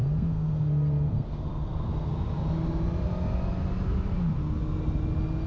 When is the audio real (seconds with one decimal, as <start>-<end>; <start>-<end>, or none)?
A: 2.1-5.5